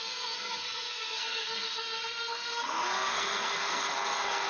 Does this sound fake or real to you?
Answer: fake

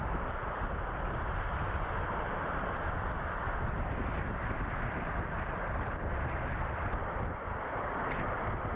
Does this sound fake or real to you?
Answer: real